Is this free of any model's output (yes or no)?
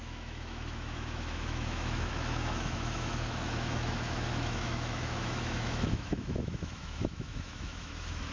no